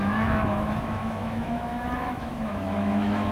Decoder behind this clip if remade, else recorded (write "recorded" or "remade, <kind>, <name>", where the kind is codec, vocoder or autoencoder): remade, autoencoder, DAC-VAE